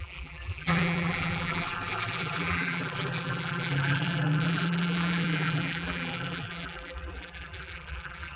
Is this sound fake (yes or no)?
yes